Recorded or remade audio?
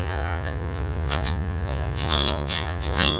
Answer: remade